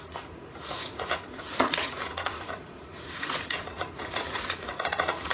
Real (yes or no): no